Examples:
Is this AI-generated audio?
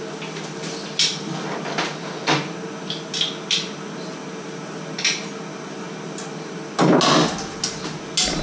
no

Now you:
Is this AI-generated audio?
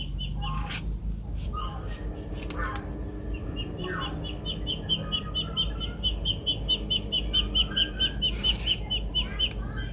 no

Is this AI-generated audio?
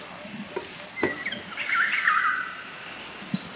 no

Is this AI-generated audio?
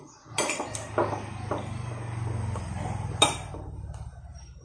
no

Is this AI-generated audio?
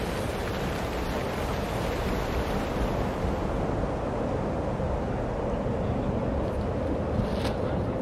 no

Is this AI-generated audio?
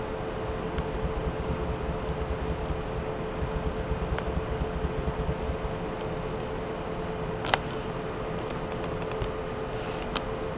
no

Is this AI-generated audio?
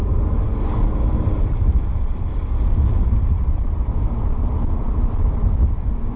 yes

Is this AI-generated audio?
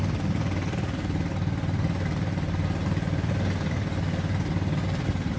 no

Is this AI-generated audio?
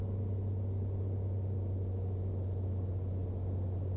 no